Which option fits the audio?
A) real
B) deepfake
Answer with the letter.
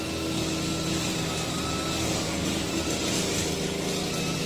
A